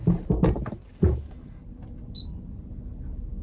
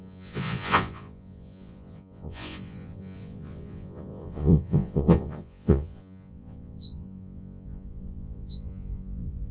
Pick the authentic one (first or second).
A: first